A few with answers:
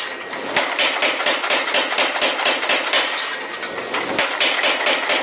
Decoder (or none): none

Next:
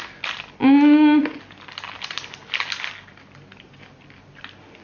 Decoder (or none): none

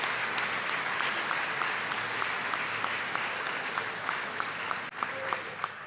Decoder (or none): none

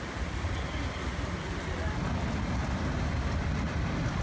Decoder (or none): none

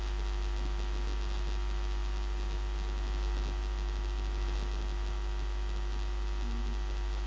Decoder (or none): none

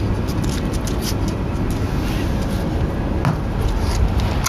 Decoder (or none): none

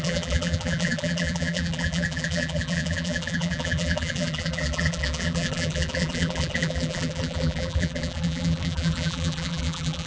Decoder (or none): vocoder, BigVGAN v2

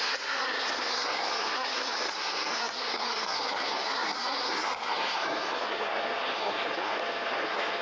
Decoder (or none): codec, SNAC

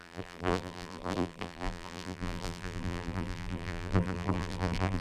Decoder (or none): vocoder, BigVGAN v2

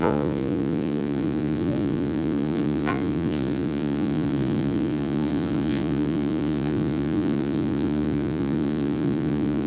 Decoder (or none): vocoder, Vocos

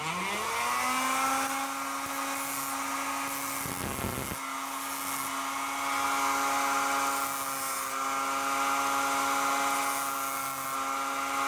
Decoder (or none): none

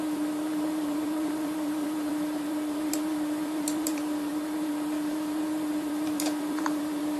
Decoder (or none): vocoder, BigVGAN v2